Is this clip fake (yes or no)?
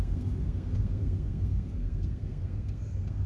yes